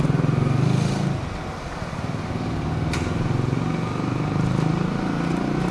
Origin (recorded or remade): recorded